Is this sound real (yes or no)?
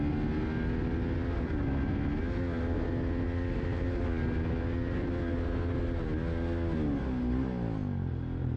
yes